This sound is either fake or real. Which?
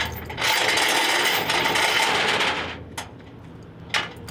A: real